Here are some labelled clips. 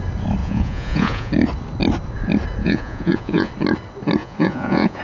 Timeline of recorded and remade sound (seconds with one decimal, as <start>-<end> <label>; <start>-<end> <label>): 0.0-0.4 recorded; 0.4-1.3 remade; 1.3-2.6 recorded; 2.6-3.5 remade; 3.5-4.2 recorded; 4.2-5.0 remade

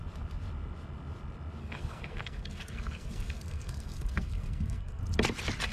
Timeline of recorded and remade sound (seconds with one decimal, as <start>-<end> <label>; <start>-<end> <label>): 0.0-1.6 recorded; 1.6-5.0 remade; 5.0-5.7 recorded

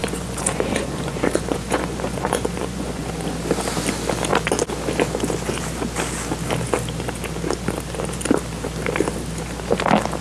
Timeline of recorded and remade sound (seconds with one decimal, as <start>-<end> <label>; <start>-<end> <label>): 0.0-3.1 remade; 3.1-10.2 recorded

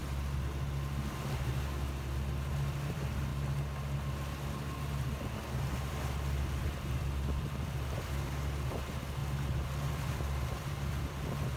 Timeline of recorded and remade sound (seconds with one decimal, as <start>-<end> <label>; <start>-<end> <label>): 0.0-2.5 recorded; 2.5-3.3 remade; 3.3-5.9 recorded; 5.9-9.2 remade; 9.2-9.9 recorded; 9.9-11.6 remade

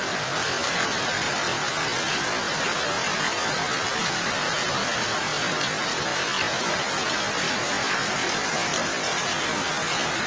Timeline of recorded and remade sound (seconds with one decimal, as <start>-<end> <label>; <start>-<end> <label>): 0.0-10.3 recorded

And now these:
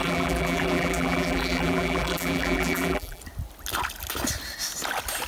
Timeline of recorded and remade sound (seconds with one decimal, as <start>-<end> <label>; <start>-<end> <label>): 0.0-3.2 remade; 3.2-5.3 recorded

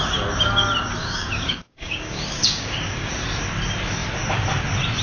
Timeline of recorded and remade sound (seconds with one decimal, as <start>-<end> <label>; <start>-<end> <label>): 0.0-1.0 recorded; 1.0-3.1 remade; 3.1-5.0 recorded

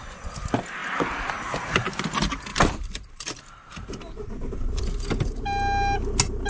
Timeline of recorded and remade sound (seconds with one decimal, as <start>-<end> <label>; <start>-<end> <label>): 0.0-2.5 recorded; 2.5-4.8 remade; 4.8-6.5 recorded